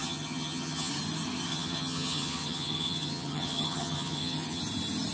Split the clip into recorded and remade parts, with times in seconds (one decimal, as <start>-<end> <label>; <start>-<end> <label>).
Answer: 0.0-0.9 remade; 0.9-1.5 recorded; 1.5-4.6 remade; 4.6-5.1 recorded